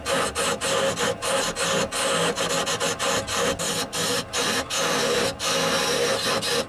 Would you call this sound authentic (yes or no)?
yes